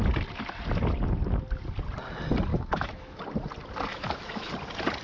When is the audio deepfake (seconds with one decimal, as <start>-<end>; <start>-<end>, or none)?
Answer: 2.5-3.2; 3.9-4.5